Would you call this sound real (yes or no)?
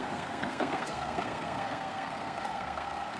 no